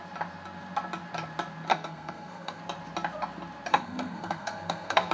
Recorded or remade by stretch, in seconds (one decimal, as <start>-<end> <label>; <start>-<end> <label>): 0.0-1.7 recorded; 1.7-2.6 remade; 2.6-3.7 recorded; 3.7-5.1 remade